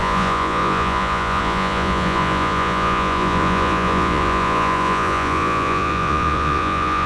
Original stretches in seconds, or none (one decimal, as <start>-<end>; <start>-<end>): none